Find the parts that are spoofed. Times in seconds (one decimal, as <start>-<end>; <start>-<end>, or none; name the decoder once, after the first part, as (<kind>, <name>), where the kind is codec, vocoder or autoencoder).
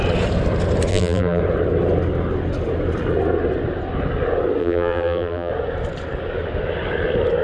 0.9-1.4 (vocoder, BigVGAN v2); 4.6-5.5